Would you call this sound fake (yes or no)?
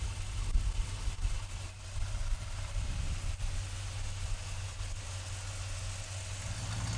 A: no